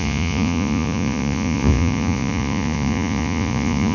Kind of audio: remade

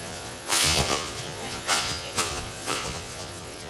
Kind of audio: remade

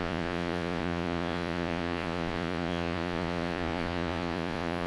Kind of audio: remade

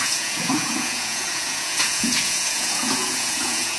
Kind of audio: remade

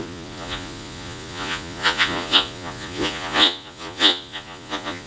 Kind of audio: remade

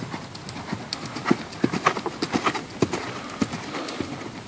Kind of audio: recorded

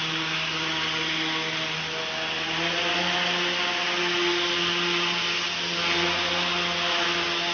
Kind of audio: recorded